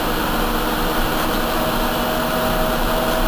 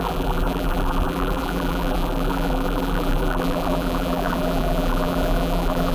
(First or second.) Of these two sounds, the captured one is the first